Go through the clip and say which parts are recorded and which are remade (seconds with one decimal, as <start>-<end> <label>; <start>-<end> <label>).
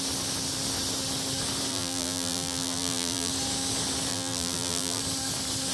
0.0-1.7 recorded; 1.7-3.3 remade; 3.3-4.1 recorded; 4.1-5.0 remade; 5.0-5.7 recorded